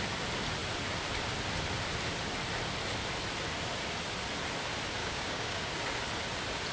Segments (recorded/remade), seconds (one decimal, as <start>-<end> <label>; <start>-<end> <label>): 0.0-5.0 recorded; 5.0-5.7 remade; 5.7-6.7 recorded

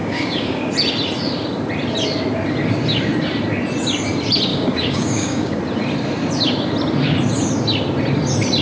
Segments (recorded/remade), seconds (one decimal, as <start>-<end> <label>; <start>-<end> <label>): 0.0-0.7 remade; 0.7-4.5 recorded; 4.5-5.6 remade; 5.6-8.6 recorded